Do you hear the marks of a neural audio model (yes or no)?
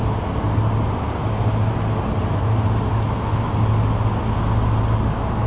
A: no